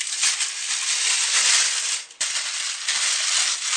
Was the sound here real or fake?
real